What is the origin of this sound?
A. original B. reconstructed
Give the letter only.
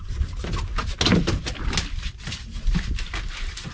A